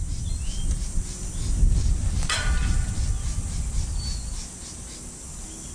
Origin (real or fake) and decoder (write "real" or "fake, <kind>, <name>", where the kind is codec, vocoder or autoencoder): real